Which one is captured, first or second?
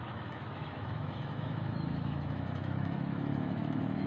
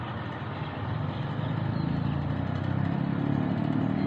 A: second